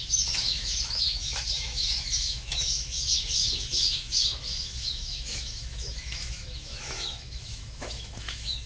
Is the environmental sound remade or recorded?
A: remade